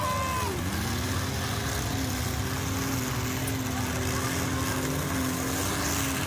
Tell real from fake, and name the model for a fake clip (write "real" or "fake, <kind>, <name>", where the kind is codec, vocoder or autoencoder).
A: real